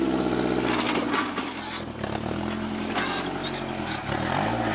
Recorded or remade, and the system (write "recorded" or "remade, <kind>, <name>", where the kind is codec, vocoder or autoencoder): recorded